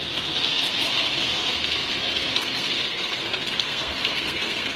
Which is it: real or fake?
fake